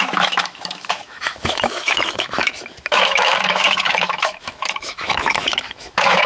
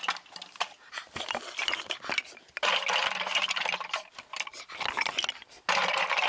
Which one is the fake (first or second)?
first